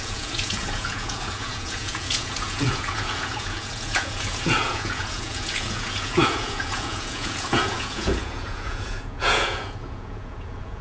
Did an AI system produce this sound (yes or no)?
yes